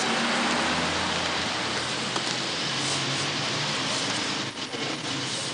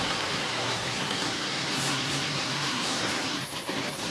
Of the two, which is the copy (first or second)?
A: second